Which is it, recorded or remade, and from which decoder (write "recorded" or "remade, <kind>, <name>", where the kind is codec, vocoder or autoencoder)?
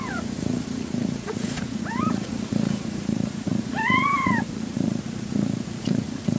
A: remade, vocoder, Vocos